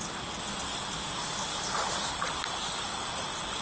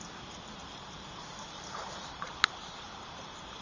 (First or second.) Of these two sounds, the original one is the first